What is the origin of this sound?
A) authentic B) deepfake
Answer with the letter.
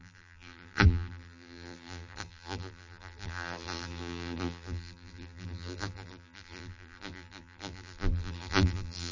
B